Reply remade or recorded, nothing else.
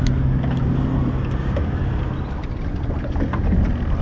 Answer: recorded